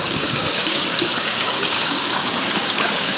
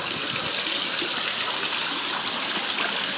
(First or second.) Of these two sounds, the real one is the second